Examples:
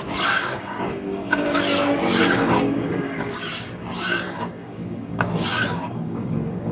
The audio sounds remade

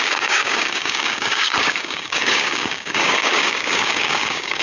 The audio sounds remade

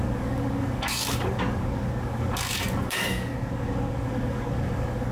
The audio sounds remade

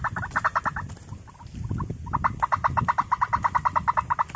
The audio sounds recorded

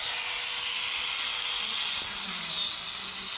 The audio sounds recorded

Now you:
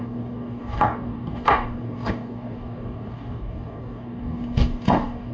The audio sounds remade